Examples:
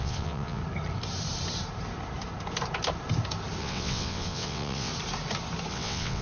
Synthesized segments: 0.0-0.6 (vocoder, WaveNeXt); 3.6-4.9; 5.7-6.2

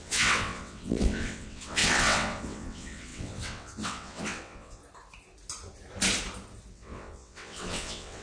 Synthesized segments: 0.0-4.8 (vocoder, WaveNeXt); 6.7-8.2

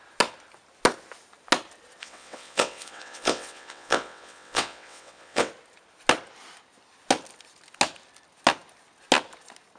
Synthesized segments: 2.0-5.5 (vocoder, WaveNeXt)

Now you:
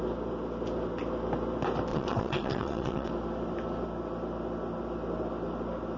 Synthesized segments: 1.9-3.1 (vocoder, WaveNeXt)

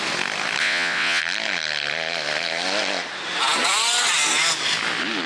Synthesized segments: 0.6-1.2 (vocoder, WaveNeXt)

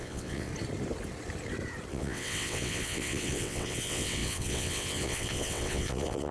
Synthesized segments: 0.0-0.5 (vocoder, WaveNeXt); 1.9-6.3